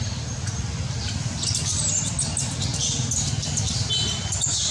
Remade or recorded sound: recorded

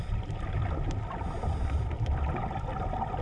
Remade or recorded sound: recorded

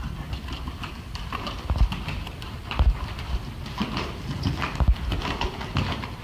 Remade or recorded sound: recorded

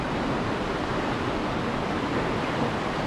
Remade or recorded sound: recorded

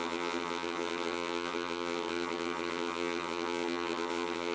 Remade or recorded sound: remade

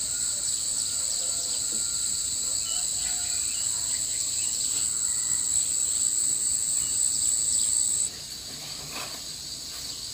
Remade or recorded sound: recorded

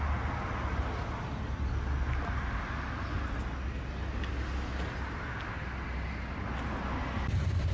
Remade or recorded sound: recorded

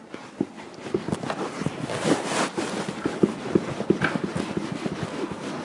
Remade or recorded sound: recorded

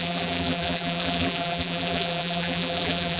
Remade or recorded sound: remade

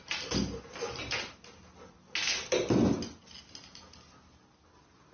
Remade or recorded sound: recorded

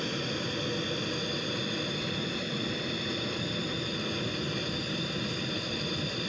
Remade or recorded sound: recorded